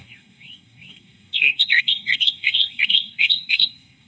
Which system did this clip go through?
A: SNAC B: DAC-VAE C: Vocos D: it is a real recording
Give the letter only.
A